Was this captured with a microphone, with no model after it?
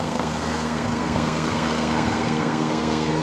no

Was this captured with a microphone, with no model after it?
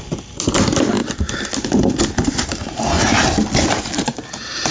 yes